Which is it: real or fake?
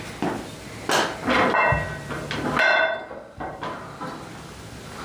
real